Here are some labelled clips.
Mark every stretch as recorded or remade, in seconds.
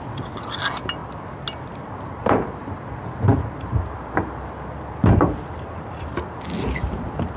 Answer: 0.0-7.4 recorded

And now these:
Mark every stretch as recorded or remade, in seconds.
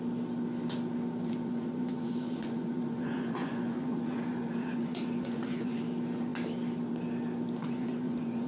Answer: 0.0-1.2 recorded; 1.2-5.8 remade; 5.8-7.6 recorded; 7.6-8.5 remade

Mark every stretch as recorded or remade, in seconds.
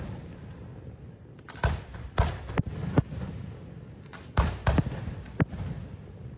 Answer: 0.0-6.4 recorded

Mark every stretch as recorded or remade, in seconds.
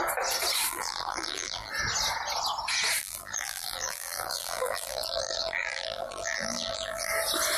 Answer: 0.0-0.7 recorded; 0.7-1.7 remade; 1.7-3.0 recorded; 3.0-7.1 remade; 7.1-7.6 recorded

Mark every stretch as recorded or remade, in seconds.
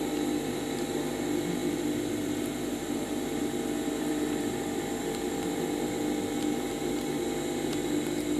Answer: 0.0-1.6 recorded; 1.6-5.8 remade; 5.8-8.4 recorded